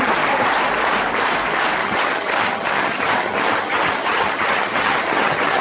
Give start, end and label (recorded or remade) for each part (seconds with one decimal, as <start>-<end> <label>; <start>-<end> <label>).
0.0-1.8 recorded; 1.8-5.6 remade